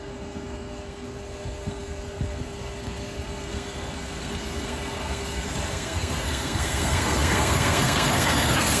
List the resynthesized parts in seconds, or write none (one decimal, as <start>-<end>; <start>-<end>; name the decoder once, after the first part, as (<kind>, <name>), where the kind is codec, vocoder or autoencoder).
0.0-8.8 (codec, SNAC)